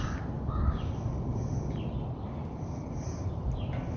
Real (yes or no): yes